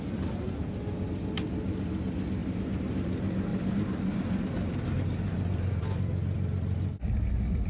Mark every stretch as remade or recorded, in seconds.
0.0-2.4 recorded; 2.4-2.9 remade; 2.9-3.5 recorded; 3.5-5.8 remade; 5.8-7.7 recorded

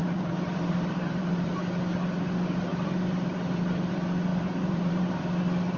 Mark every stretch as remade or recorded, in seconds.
0.0-1.5 remade; 1.5-2.7 recorded; 2.7-3.6 remade; 3.6-4.3 recorded; 4.3-5.1 remade; 5.1-5.8 recorded

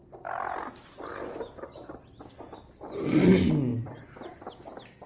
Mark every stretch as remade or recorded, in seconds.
0.0-1.1 recorded; 1.1-3.3 remade; 3.3-3.7 recorded; 3.7-5.1 remade

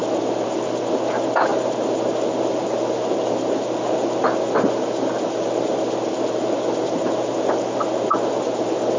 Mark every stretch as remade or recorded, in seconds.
0.0-0.9 remade; 0.9-9.0 recorded

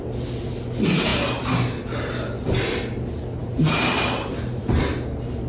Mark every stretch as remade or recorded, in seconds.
0.0-3.4 recorded; 3.4-4.8 remade; 4.8-5.5 recorded

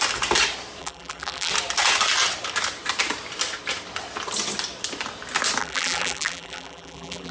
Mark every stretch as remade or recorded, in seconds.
0.0-0.8 recorded; 0.8-1.5 remade; 1.5-5.6 recorded; 5.6-7.3 remade